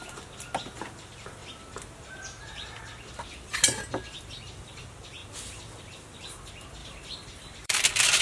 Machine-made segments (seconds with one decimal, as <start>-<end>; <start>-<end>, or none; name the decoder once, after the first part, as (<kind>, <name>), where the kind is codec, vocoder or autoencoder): 6.8-8.2 (vocoder, BigVGAN v2)